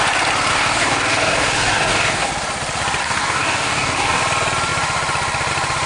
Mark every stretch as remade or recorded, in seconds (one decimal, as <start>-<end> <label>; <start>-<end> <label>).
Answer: 0.0-0.5 recorded; 0.5-2.3 remade; 2.3-3.0 recorded; 3.0-4.2 remade; 4.2-5.9 recorded